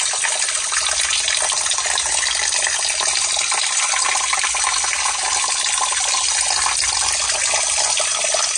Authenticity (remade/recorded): recorded